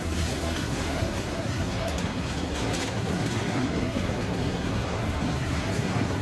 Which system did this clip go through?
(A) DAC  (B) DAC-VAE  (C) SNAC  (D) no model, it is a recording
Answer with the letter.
C